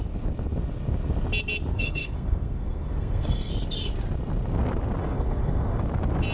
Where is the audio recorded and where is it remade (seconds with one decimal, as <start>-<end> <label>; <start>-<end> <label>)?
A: 0.0-1.7 recorded; 1.7-3.5 remade; 3.5-5.0 recorded; 5.0-5.8 remade; 5.8-6.3 recorded